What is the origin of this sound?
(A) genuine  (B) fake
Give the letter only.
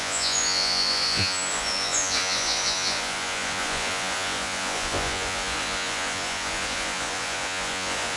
B